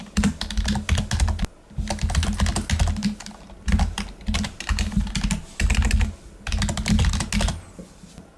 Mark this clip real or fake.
real